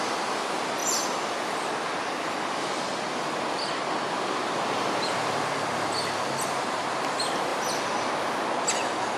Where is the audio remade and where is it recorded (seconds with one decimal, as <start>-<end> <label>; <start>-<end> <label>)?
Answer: 0.0-9.2 recorded

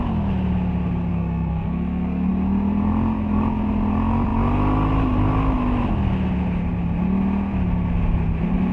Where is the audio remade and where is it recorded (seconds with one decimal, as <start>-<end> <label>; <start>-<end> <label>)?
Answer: 0.0-1.1 recorded; 1.1-2.3 remade; 2.3-8.7 recorded

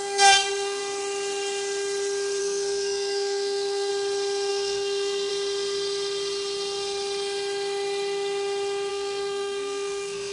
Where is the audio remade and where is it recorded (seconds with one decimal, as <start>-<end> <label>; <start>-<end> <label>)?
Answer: 0.0-0.8 remade; 0.8-2.4 recorded; 2.4-3.9 remade; 3.9-4.5 recorded; 4.5-5.3 remade; 5.3-8.9 recorded; 8.9-10.3 remade

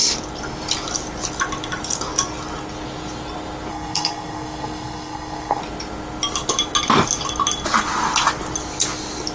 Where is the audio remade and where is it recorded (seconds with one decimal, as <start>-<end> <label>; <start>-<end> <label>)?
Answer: 0.0-3.7 recorded; 3.7-5.6 remade; 5.6-9.3 recorded